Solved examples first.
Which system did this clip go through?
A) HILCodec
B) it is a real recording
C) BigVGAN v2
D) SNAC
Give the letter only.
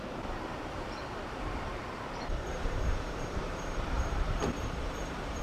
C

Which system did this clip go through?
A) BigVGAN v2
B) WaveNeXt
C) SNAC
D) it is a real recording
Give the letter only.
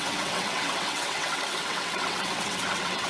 B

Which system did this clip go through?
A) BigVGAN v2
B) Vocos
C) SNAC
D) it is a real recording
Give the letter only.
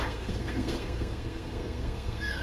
C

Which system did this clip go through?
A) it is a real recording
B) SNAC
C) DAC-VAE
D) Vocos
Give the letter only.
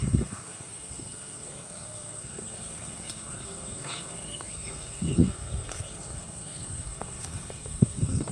B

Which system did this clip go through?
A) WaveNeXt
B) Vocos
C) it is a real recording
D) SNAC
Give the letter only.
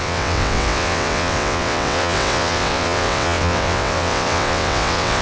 A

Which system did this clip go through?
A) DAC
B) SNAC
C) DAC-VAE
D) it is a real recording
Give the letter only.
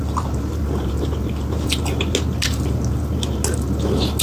D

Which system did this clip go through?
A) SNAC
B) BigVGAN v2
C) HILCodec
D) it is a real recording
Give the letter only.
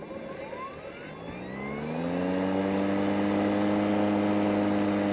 D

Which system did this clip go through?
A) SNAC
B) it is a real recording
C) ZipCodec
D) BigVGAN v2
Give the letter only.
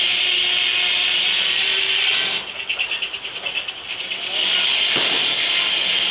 B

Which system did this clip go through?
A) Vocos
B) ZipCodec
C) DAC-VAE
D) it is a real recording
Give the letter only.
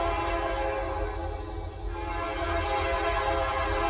D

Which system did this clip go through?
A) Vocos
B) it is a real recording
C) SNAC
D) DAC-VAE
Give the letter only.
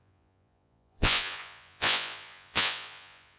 A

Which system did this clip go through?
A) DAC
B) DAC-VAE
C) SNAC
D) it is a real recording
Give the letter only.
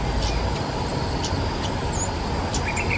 D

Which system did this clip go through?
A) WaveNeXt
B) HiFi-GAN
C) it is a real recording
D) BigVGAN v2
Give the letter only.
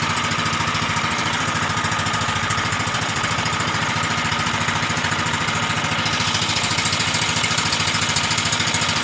D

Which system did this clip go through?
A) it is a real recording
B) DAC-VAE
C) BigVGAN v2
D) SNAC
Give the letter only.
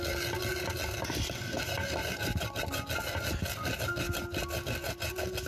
A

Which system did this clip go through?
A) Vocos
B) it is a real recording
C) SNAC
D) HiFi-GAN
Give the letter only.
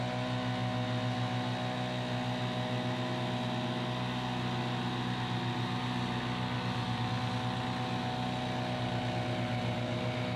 B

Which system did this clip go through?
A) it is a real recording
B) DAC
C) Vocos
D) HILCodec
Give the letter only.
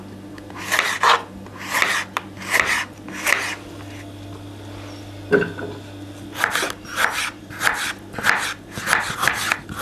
A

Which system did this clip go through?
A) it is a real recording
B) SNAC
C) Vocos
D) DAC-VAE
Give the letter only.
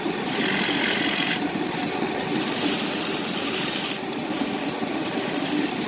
A